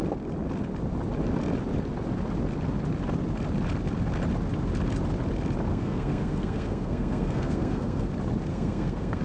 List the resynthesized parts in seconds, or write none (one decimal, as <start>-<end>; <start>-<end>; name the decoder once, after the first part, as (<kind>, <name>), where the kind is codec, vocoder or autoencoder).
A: 5.7-8.1 (codec, SNAC); 8.5-9.2